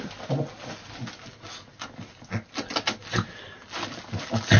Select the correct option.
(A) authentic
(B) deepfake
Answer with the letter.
A